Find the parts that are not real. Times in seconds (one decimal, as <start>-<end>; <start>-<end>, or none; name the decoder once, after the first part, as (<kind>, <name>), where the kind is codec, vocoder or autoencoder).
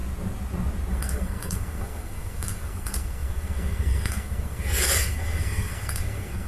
0.9-6.5 (codec, SNAC)